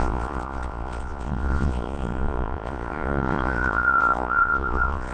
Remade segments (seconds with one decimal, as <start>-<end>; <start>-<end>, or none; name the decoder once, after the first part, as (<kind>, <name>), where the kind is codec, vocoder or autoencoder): 0.0-5.1 (vocoder, Vocos)